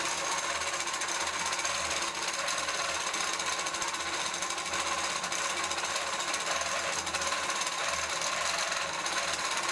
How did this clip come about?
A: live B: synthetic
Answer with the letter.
A